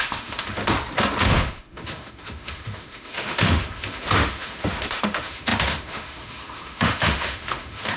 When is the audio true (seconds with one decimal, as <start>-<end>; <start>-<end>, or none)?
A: 0.6-1.2